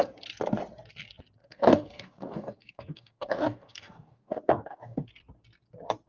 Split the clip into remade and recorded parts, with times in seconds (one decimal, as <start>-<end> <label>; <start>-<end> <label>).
0.0-1.4 recorded; 1.4-5.1 remade; 5.1-6.1 recorded

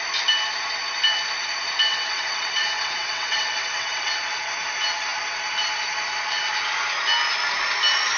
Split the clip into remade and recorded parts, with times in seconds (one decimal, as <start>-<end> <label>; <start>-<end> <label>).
0.0-1.9 recorded; 1.9-4.1 remade; 4.1-8.2 recorded

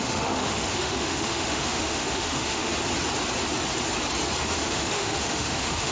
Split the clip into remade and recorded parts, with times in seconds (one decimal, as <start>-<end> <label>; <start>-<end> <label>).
0.0-2.7 remade; 2.7-4.5 recorded; 4.5-5.9 remade

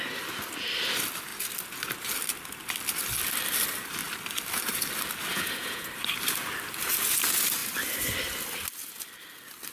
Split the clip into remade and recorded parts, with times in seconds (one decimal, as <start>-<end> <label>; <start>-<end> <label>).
0.0-5.3 recorded; 5.3-5.9 remade; 5.9-9.7 recorded

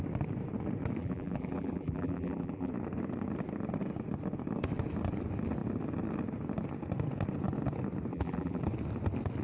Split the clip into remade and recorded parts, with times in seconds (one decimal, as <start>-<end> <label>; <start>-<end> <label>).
0.0-1.0 recorded; 1.0-2.7 remade; 2.7-8.1 recorded; 8.1-8.6 remade; 8.6-9.4 recorded

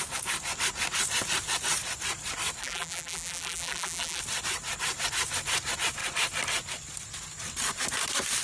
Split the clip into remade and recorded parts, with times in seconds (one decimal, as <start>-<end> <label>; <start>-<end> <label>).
0.0-2.6 recorded; 2.6-4.2 remade; 4.2-8.4 recorded

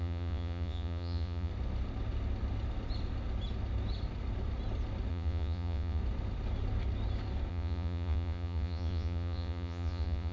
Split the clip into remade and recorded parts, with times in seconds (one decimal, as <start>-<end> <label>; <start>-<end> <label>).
0.0-1.5 remade; 1.5-5.1 recorded; 5.1-6.0 remade; 6.0-7.5 recorded; 7.5-10.3 remade

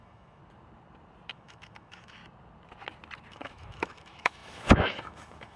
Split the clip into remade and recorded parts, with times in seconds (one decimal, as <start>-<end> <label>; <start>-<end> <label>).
0.0-0.4 remade; 0.4-1.3 recorded; 1.3-2.2 remade; 2.2-3.3 recorded; 3.3-5.6 remade